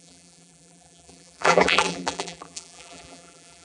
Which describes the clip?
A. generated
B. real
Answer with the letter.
A